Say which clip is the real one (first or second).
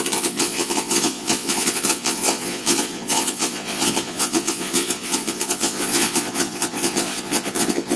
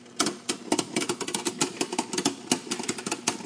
second